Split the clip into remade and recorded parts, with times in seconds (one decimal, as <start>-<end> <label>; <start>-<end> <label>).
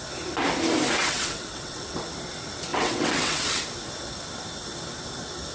0.0-1.0 recorded; 1.0-2.0 remade; 2.0-2.7 recorded; 2.7-3.6 remade; 3.6-5.5 recorded